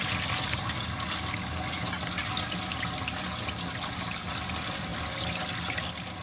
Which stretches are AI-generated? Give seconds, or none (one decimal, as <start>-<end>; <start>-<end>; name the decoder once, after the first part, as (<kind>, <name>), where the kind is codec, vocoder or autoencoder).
none

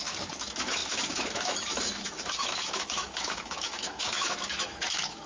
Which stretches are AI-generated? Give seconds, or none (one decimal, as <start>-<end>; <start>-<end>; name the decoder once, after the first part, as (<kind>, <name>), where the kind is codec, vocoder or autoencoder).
0.0-5.3 (autoencoder, DAC-VAE)

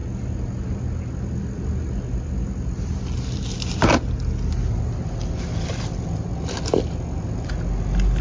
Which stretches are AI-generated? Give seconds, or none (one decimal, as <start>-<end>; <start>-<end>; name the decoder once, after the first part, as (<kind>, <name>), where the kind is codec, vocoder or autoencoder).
none

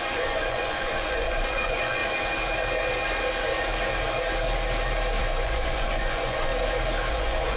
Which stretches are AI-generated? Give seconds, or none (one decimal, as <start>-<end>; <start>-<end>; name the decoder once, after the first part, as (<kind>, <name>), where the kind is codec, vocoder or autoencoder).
0.0-2.0 (vocoder, Vocos); 5.2-6.5; 7.1-7.6

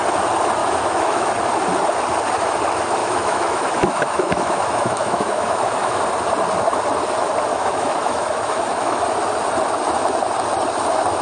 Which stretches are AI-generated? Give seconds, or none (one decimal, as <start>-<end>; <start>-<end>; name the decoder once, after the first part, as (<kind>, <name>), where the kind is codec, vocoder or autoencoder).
0.6-1.3 (autoencoder, DAC-VAE); 3.0-6.0; 7.5-9.0

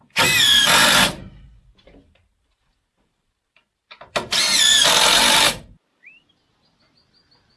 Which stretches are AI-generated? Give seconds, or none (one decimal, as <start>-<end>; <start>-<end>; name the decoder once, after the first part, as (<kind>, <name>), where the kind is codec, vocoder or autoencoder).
0.8-3.3 (vocoder, BigVGAN v2); 4.7-6.3

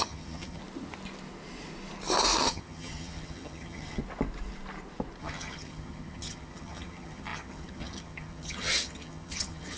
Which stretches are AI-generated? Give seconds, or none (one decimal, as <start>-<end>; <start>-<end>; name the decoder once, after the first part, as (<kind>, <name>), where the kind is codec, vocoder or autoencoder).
0.0-0.6 (vocoder, HiFi-GAN); 2.4-4.0; 5.2-9.8